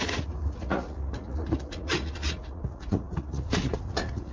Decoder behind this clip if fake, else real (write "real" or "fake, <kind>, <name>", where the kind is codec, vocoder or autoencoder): fake, vocoder, Vocos